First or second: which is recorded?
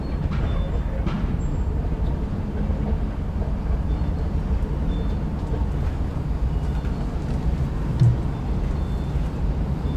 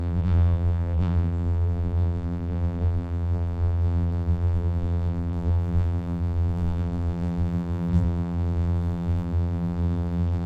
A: first